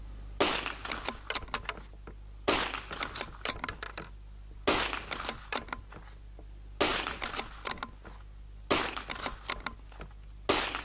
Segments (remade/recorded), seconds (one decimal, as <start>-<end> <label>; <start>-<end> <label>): 0.0-6.9 recorded; 6.9-7.4 remade; 7.4-10.8 recorded